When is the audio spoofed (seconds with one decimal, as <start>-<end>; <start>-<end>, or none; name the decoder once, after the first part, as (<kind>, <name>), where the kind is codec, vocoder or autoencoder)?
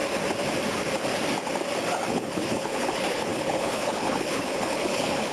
2.1-5.3 (codec, HILCodec)